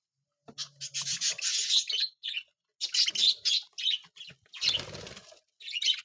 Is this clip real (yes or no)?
yes